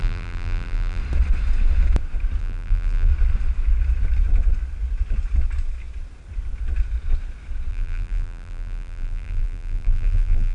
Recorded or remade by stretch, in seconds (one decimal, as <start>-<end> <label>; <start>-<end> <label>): 0.0-1.0 remade; 1.0-2.4 recorded; 2.4-3.1 remade; 3.1-7.7 recorded; 7.7-10.5 remade